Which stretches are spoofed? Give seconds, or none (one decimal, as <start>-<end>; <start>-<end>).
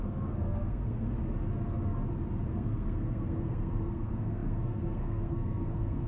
0.0-1.2; 2.5-6.1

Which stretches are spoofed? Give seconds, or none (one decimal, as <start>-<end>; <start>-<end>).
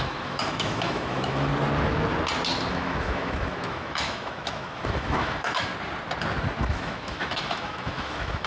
0.0-1.5; 2.7-5.7; 6.6-8.5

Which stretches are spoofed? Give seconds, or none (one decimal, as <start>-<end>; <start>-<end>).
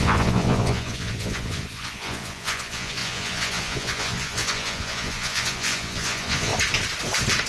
0.0-6.5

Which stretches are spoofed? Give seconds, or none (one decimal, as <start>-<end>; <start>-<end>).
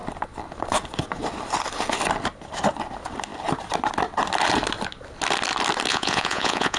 5.9-6.8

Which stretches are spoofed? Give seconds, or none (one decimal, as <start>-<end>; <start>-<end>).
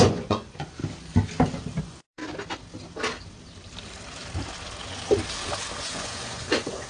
0.0-0.8; 1.8-2.2; 5.8-6.9